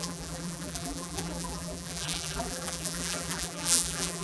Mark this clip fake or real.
fake